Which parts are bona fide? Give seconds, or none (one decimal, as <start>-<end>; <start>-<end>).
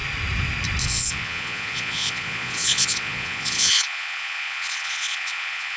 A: 0.0-0.8